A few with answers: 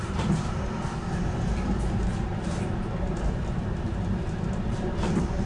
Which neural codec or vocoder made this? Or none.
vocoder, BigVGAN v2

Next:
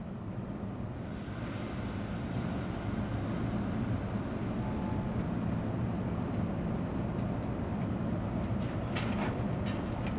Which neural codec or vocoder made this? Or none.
none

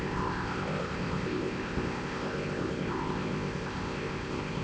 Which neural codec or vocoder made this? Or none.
codec, ZipCodec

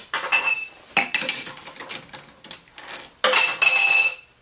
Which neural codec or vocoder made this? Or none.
none